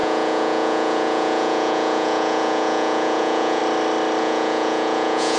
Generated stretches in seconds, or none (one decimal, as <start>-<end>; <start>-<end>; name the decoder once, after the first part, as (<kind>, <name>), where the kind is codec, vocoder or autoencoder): 0.0-3.6 (vocoder, Vocos); 4.2-5.4